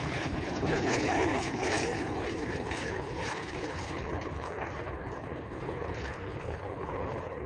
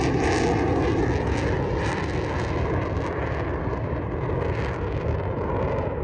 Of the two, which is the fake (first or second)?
first